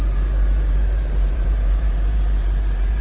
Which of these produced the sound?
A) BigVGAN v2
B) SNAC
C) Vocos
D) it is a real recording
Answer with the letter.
A